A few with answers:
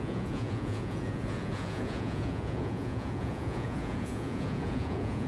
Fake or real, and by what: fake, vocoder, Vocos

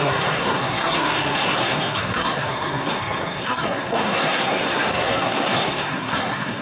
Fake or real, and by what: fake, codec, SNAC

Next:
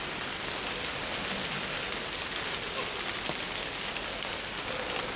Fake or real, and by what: real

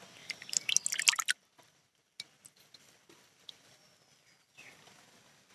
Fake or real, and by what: real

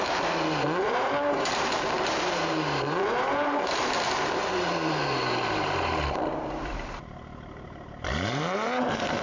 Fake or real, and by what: fake, vocoder, BigVGAN v2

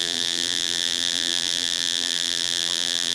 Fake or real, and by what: fake, vocoder, BigVGAN v2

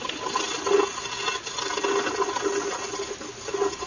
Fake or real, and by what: real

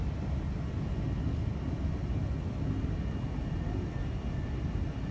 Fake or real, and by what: real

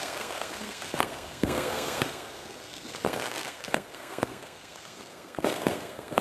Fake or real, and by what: fake, codec, SNAC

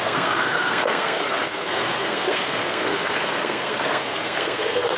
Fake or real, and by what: fake, codec, SNAC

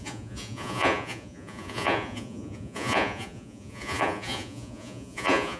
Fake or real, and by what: fake, vocoder, Vocos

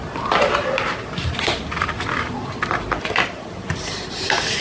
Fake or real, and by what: fake, vocoder, BigVGAN v2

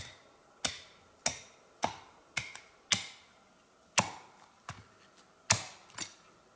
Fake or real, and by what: real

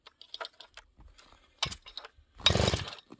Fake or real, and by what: real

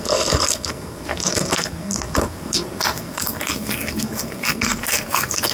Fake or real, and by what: fake, codec, SNAC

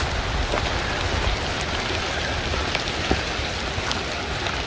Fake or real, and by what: real